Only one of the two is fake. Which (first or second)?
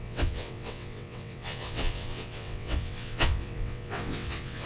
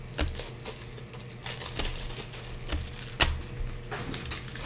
first